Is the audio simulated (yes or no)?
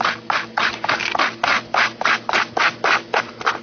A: no